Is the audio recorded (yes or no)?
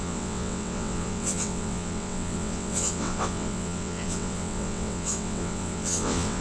no